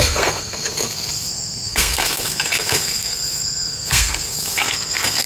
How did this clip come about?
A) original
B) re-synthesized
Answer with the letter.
B